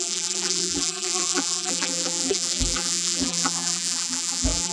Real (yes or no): no